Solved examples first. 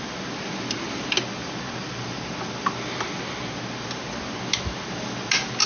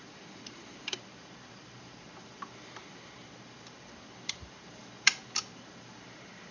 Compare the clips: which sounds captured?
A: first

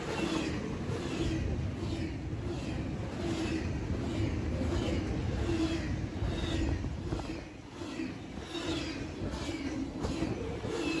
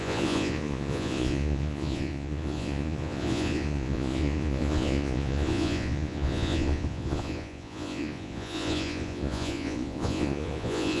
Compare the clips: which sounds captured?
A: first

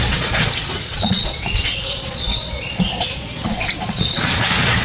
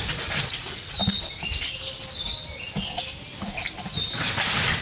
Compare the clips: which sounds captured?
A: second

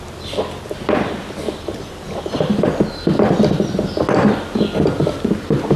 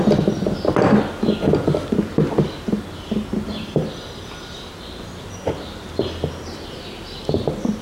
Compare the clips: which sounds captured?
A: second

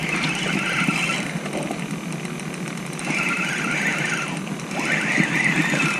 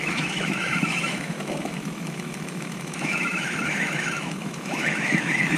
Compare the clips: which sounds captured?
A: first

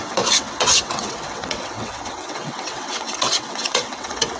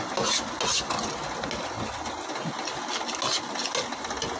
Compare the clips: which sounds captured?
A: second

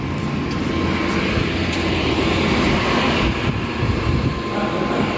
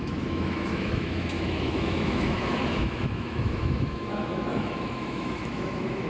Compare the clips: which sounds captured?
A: first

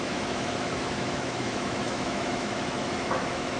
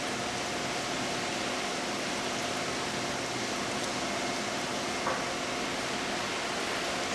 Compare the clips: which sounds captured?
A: second